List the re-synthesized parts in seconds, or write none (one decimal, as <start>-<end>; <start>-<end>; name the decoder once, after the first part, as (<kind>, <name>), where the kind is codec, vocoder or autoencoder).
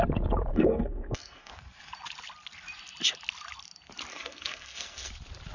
0.5-1.5 (codec, SNAC); 4.1-5.1